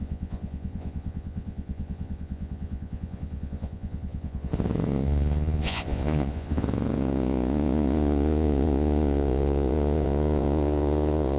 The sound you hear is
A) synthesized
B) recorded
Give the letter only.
A